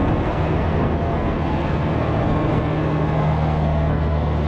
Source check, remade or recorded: remade